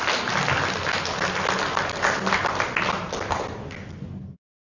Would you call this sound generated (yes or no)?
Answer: no